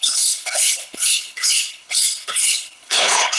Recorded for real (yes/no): no